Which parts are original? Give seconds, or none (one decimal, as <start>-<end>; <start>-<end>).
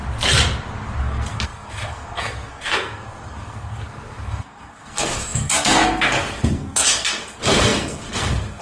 0.0-1.0